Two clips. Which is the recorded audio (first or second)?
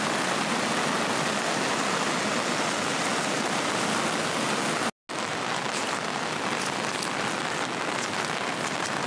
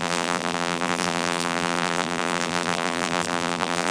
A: first